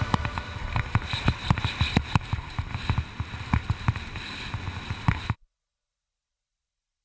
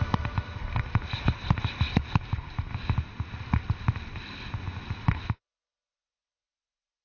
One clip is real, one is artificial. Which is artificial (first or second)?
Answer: first